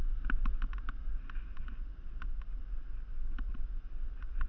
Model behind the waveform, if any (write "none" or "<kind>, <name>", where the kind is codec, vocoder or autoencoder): none